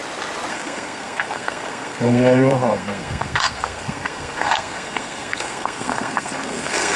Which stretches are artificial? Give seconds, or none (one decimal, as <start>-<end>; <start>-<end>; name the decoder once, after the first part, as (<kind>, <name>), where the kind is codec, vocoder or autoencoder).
0.5-7.0 (codec, SNAC)

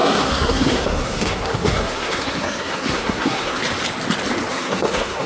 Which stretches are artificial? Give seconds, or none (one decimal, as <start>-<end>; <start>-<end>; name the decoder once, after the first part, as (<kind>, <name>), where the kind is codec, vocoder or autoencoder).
0.0-3.6 (codec, SNAC); 4.5-5.3